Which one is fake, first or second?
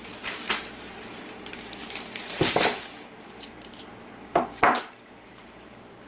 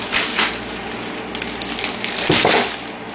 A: first